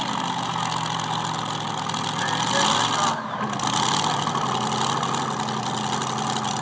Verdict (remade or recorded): recorded